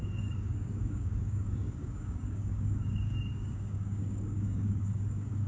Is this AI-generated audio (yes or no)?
yes